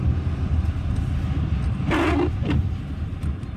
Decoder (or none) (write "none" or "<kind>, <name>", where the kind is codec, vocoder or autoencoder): none